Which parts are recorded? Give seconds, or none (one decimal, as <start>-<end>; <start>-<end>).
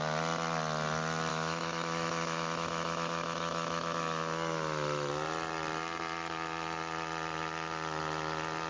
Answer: 0.0-1.3; 5.1-8.7